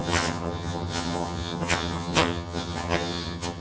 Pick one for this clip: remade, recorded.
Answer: remade